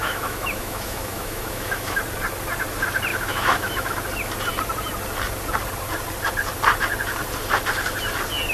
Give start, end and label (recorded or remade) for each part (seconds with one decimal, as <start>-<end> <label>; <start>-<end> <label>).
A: 0.0-2.0 remade; 2.0-3.1 recorded; 3.1-3.9 remade; 3.9-8.5 recorded